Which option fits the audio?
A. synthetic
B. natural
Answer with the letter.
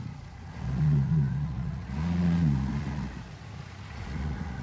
A